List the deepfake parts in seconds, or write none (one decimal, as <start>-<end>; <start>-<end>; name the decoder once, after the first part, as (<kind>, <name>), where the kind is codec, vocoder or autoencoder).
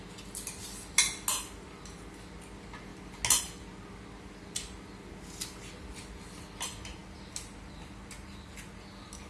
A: none